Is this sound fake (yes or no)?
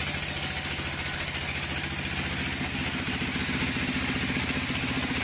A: no